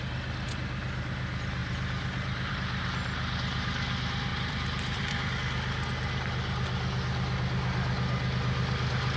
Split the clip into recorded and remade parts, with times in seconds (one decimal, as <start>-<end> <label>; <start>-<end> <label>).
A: 0.0-1.6 recorded; 1.6-2.5 remade; 2.5-4.3 recorded; 4.3-5.3 remade; 5.3-9.2 recorded